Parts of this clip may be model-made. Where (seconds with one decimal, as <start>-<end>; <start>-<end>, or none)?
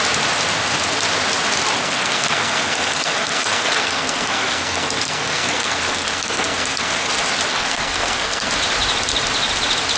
1.8-7.1; 7.5-8.5